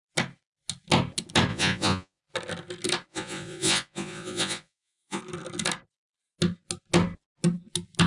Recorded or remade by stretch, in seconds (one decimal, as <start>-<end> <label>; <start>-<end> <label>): 0.0-1.5 recorded; 1.5-2.2 remade; 2.2-3.1 recorded; 3.1-5.2 remade; 5.2-8.1 recorded